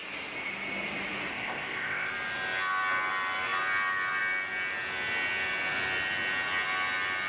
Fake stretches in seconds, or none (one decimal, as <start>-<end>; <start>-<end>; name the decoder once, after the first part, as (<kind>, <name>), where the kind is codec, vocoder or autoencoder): 1.3-2.1 (codec, ZipCodec)